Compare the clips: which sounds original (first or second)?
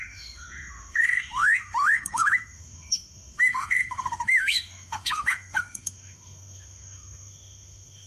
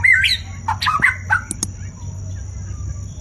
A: second